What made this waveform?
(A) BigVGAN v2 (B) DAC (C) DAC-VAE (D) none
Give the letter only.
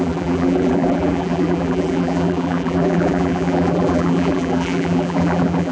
A